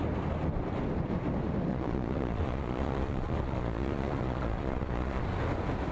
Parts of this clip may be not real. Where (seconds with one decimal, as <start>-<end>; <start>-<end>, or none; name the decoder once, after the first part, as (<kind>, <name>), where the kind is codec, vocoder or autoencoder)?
1.7-5.2 (vocoder, Vocos)